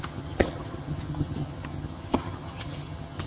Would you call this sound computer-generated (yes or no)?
yes